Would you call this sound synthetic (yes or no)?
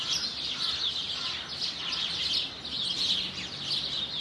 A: no